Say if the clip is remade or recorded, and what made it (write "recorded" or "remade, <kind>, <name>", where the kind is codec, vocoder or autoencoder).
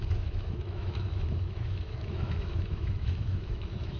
remade, autoencoder, DAC-VAE